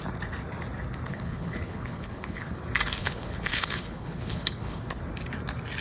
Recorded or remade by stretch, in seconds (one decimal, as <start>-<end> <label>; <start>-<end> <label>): 0.0-1.1 recorded; 1.1-2.6 remade; 2.6-3.0 recorded; 3.0-5.0 remade; 5.0-5.8 recorded